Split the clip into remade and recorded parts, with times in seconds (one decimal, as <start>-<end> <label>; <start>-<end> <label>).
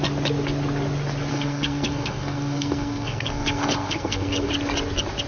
0.0-1.3 recorded; 1.3-4.5 remade; 4.5-5.3 recorded